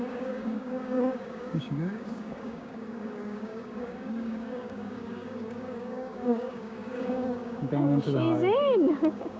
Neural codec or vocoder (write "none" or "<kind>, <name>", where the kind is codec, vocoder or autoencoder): codec, DAC